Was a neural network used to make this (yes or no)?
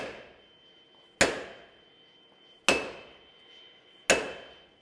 no